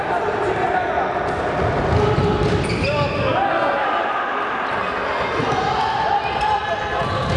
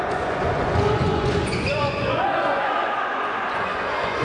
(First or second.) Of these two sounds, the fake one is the second